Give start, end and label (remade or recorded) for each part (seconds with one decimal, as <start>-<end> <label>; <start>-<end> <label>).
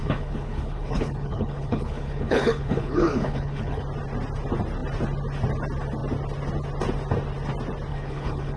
0.0-3.8 remade; 3.8-7.9 recorded; 7.9-8.6 remade